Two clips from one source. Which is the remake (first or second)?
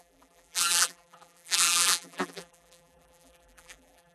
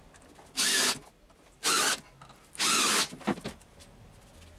first